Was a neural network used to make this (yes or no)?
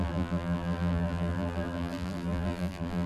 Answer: yes